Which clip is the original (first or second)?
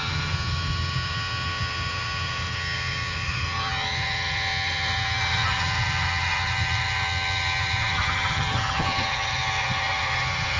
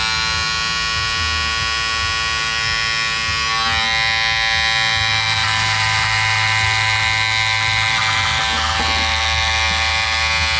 second